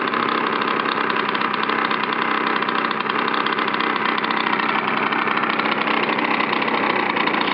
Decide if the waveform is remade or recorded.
recorded